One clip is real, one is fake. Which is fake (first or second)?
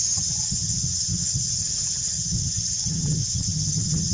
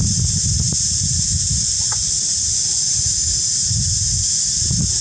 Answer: first